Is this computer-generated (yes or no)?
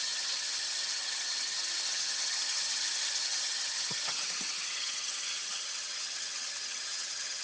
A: yes